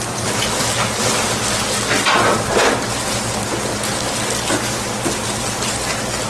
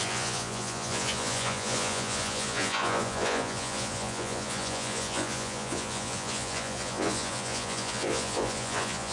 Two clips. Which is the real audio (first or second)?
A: first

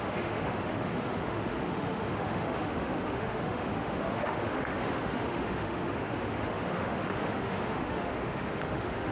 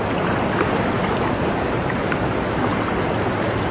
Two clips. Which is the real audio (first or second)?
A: second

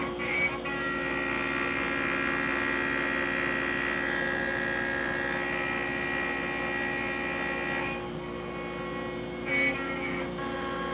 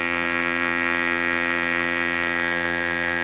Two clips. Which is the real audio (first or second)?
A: first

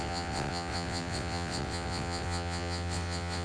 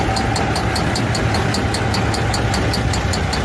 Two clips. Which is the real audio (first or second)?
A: second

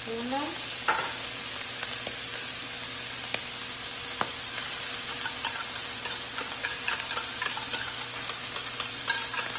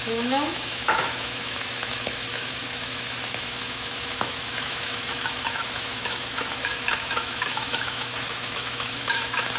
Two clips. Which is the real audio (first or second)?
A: first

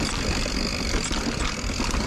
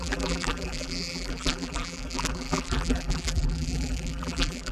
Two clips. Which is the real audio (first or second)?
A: first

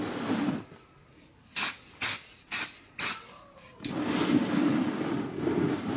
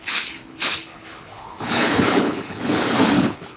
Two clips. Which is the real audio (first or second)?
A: first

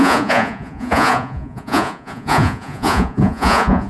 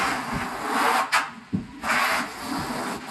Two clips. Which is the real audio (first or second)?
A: second